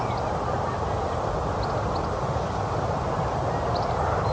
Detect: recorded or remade recorded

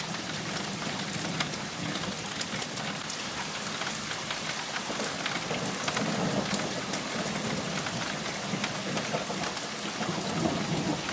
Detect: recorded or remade recorded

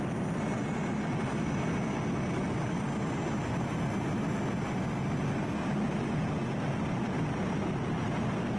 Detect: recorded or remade recorded